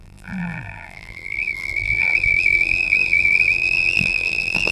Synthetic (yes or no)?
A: yes